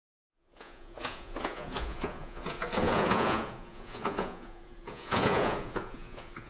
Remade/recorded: remade